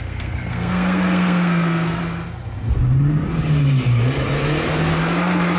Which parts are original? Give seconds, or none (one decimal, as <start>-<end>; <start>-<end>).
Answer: 2.0-5.6